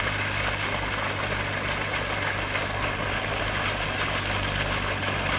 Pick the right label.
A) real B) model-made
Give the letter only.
A